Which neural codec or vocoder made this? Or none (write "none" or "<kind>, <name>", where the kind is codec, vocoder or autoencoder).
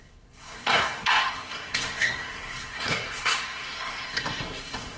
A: codec, SNAC